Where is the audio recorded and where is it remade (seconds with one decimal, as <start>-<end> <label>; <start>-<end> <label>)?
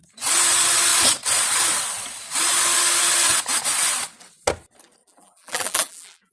0.0-5.0 recorded; 5.0-6.3 remade